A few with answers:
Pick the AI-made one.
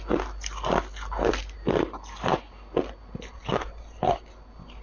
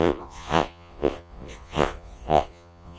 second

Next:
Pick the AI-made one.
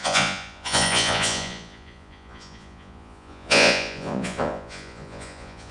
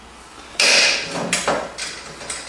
first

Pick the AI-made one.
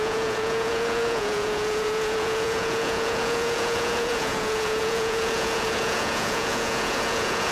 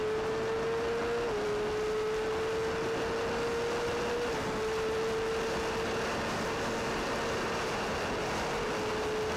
first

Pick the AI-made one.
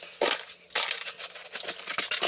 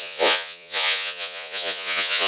second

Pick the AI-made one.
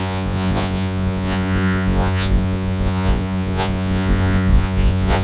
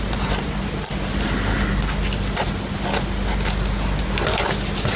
first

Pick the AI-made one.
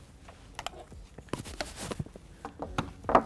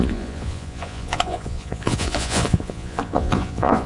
second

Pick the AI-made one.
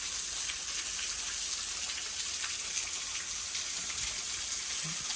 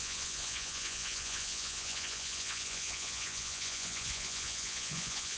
second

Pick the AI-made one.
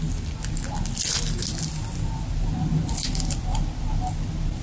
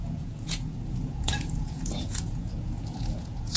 second